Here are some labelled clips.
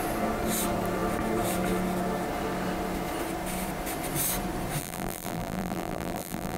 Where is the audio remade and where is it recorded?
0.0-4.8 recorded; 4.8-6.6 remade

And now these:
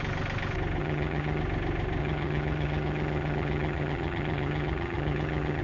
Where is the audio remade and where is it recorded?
0.0-0.8 recorded; 0.8-1.4 remade; 1.4-2.0 recorded; 2.0-5.6 remade